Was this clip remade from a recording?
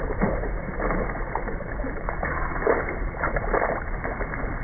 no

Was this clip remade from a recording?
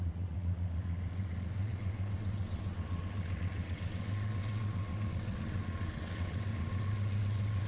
yes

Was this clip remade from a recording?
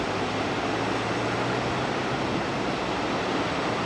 no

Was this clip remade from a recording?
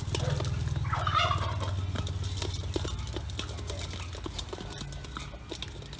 no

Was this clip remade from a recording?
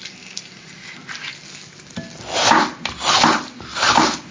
no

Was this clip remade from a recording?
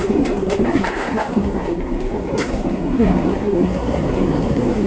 yes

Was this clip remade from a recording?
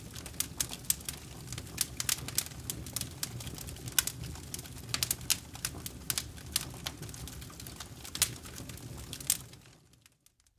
no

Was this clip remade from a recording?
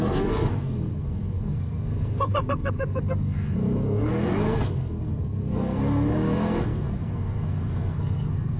yes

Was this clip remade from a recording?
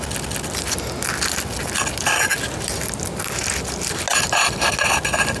no